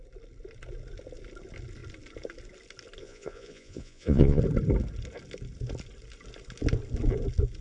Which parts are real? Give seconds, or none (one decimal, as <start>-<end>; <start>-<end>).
0.0-3.0; 4.4-7.6

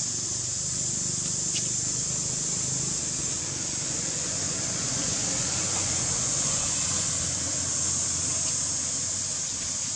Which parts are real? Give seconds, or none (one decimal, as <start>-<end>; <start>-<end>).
0.0-3.2; 7.1-10.0

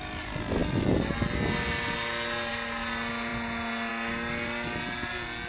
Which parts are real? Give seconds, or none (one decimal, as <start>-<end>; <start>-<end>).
0.0-5.5

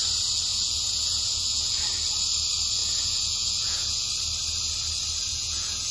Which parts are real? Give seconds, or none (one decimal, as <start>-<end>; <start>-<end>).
0.0-0.5; 1.8-2.8; 4.1-5.3

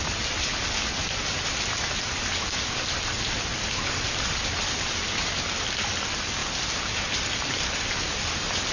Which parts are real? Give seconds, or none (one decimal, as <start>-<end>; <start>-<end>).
0.0-8.7